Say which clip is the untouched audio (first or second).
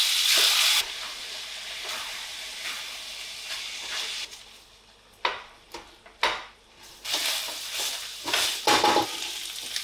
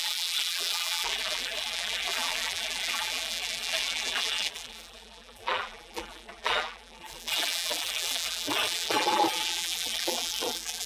first